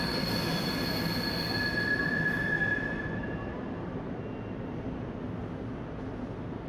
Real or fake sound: real